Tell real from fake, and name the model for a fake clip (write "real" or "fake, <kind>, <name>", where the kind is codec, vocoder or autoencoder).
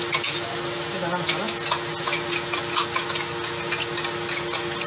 real